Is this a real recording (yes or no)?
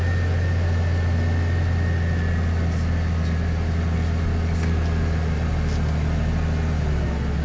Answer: yes